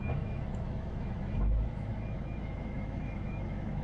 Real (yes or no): no